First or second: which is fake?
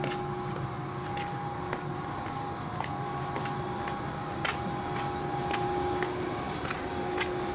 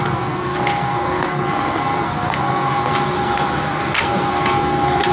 second